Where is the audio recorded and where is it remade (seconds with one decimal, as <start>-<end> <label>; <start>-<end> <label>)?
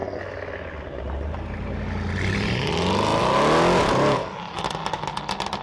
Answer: 0.0-5.6 recorded